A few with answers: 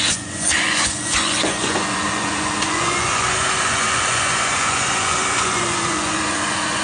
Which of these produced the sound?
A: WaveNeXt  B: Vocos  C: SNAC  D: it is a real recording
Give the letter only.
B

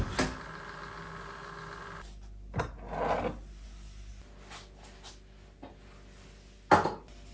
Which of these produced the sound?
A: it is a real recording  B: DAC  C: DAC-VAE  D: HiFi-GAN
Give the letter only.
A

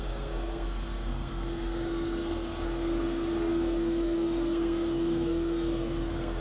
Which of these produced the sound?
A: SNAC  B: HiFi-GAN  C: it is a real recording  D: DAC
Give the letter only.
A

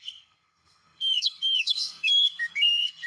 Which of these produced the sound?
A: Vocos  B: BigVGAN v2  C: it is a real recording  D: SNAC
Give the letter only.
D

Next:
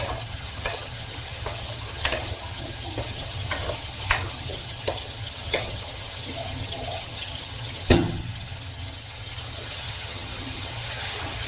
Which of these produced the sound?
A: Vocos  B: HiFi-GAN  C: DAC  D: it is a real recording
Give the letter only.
B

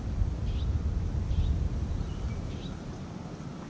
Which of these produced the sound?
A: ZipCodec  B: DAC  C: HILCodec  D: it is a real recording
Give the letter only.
D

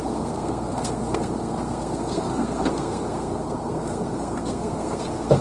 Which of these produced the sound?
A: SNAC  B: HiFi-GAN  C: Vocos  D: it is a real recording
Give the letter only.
A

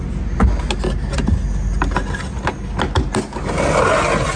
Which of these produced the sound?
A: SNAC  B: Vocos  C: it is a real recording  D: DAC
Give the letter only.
C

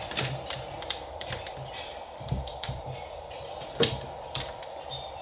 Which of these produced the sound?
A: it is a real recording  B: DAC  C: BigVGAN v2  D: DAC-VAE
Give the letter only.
C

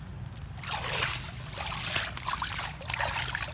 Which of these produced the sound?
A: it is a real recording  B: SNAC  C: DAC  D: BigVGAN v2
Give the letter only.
A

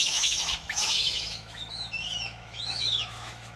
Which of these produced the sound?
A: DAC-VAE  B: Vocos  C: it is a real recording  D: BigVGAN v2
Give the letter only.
A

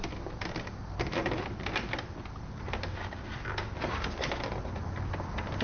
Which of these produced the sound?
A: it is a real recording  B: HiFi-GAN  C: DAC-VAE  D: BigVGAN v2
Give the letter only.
A